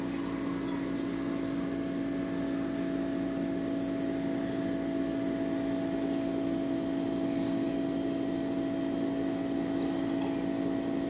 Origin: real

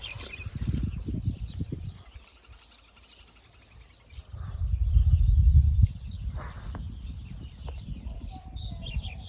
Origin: real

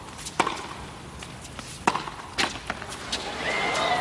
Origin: real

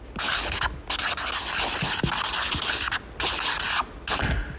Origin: real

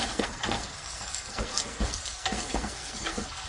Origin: fake